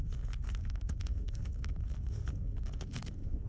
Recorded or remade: remade